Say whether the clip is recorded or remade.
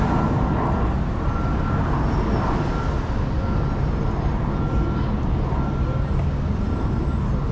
recorded